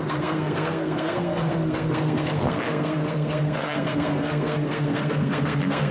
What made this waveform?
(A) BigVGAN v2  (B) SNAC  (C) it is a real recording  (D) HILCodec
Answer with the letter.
B